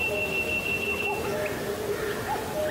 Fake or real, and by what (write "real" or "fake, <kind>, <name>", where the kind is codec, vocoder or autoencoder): real